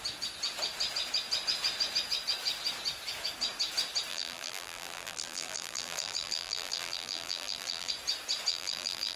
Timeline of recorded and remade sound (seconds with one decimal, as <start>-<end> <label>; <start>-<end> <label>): 0.0-4.1 recorded; 4.1-7.9 remade; 7.9-8.5 recorded; 8.5-9.2 remade